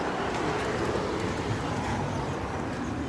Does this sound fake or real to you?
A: real